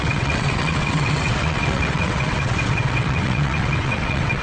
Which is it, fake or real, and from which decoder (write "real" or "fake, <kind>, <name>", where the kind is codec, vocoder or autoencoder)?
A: fake, vocoder, WaveNeXt